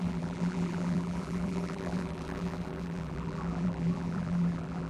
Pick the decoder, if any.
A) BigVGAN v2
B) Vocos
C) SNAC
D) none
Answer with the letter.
A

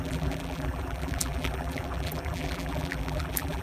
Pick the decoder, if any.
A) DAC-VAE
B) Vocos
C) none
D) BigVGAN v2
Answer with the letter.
D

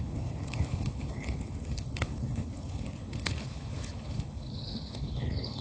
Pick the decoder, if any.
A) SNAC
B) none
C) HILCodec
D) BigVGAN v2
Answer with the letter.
C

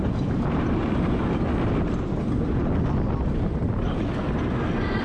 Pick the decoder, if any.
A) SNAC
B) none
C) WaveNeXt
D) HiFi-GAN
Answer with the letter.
B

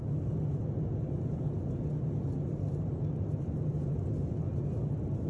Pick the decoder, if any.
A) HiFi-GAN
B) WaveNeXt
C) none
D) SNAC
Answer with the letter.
C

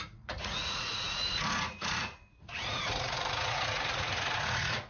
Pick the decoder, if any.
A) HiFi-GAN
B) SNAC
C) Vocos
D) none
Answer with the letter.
C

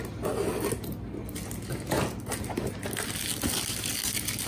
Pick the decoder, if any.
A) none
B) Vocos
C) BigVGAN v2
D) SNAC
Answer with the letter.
A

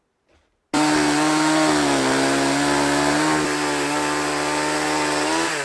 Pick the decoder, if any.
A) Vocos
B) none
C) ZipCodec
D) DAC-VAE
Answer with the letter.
B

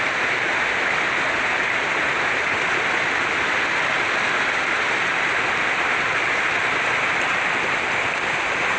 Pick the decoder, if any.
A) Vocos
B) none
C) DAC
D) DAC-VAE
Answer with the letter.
B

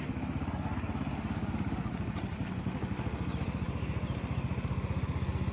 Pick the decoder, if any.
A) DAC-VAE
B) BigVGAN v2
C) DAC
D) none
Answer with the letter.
D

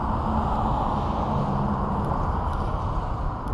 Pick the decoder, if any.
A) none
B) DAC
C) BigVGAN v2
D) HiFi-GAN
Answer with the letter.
A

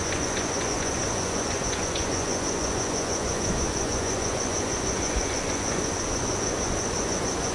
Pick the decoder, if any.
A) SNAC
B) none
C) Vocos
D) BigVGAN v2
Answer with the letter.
C